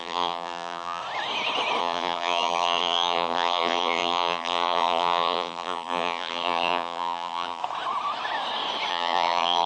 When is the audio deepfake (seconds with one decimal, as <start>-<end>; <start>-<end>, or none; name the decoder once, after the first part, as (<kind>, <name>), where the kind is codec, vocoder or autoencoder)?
0.0-1.0 (vocoder, BigVGAN v2); 1.8-7.6; 8.9-9.7